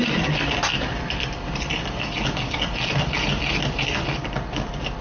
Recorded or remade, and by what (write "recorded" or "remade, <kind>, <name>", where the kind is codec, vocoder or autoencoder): recorded